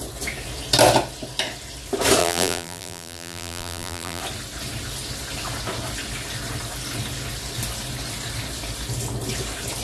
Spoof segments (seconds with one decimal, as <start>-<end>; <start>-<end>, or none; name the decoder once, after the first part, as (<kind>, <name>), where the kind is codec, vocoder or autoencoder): 2.2-4.2 (vocoder, BigVGAN v2)